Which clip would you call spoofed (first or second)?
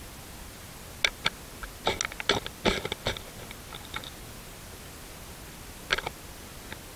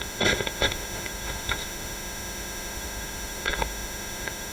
second